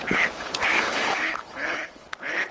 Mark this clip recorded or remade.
remade